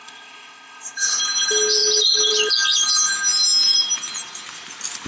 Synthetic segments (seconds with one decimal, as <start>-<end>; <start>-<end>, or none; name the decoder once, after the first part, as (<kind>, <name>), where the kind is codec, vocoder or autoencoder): 0.0-1.2 (codec, ZipCodec)